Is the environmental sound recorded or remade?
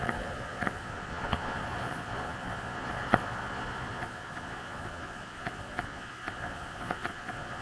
remade